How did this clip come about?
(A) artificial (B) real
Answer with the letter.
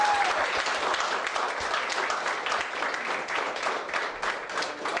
B